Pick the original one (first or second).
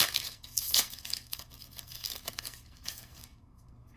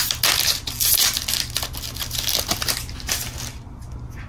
second